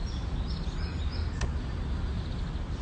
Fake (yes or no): no